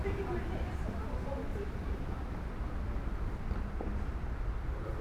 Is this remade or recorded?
remade